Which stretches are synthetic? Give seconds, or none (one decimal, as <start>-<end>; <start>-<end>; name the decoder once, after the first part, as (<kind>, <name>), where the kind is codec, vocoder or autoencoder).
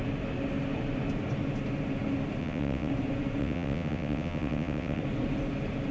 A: 2.4-2.9 (vocoder, WaveNeXt); 3.4-5.0